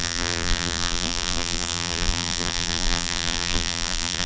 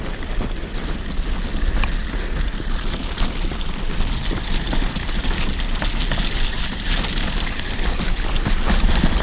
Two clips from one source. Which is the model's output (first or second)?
first